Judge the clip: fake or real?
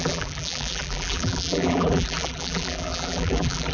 fake